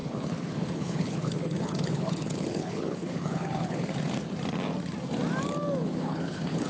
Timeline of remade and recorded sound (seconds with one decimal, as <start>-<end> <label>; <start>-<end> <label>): 0.0-3.9 remade; 3.9-5.8 recorded; 5.8-6.7 remade